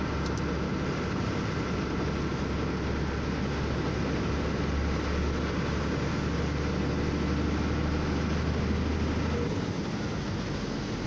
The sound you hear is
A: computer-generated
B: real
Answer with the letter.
B